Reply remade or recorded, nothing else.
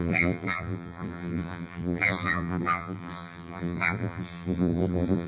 remade